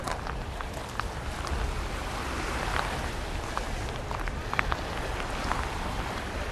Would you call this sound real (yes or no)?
yes